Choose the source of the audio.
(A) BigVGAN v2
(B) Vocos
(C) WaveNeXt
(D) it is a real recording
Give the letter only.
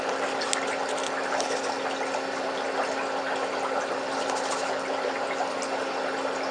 D